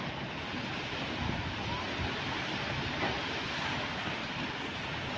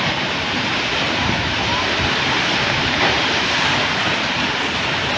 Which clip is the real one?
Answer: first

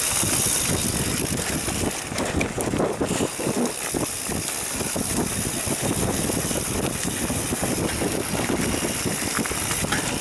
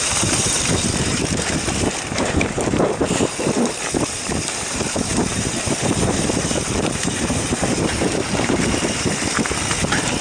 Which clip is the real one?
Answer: first